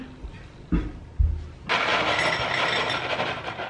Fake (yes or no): no